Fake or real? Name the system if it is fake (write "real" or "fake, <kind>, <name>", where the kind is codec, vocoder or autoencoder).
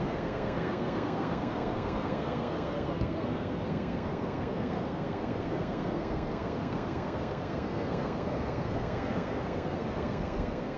fake, codec, SNAC